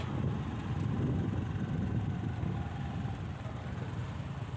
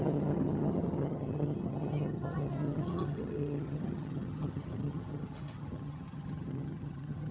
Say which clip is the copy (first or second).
second